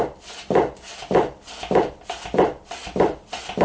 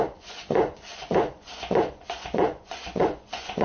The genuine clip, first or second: first